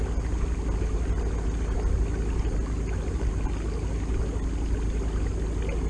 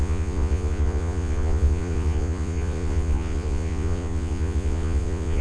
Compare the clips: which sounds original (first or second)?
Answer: first